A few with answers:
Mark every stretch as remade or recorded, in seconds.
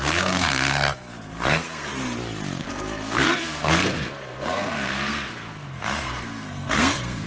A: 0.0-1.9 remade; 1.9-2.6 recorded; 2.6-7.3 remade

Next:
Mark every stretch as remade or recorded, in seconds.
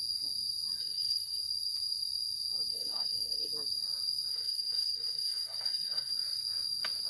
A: 0.0-0.8 recorded; 0.8-1.4 remade; 1.4-2.7 recorded; 2.7-3.5 remade; 3.5-4.3 recorded; 4.3-6.1 remade; 6.1-7.1 recorded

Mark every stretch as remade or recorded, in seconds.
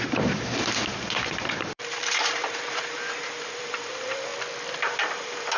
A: 0.0-4.3 remade; 4.3-4.8 recorded; 4.8-5.6 remade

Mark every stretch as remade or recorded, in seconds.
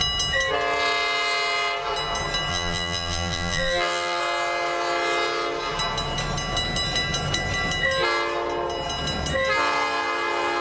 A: 0.0-2.5 recorded; 2.5-4.2 remade; 4.2-10.6 recorded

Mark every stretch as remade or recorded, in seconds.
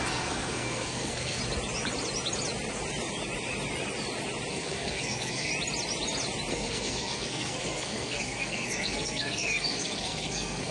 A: 0.0-1.4 remade; 1.4-4.5 recorded; 4.5-5.5 remade; 5.5-6.5 recorded; 6.5-10.7 remade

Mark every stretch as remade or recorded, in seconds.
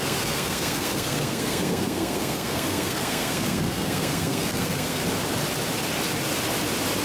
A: 0.0-5.0 remade; 5.0-7.0 recorded